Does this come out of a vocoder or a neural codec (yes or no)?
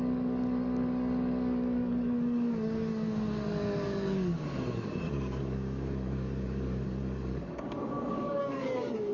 yes